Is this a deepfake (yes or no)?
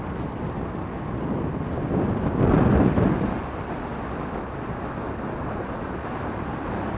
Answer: no